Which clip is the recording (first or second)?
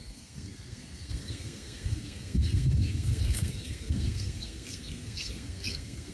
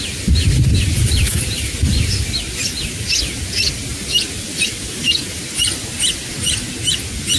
second